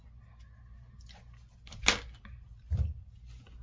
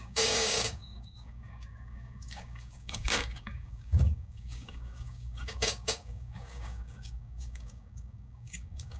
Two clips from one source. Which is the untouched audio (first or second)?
first